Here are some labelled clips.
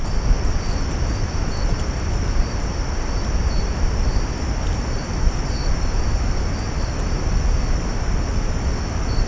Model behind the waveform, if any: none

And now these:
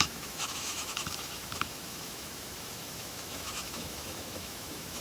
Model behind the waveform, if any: autoencoder, DAC-VAE